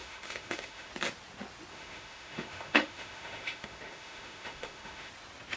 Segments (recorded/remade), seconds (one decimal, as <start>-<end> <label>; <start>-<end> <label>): 0.0-0.9 remade; 0.9-1.7 recorded; 1.7-5.1 remade; 5.1-5.6 recorded